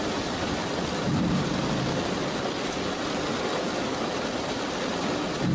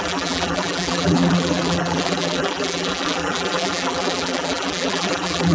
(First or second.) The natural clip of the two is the first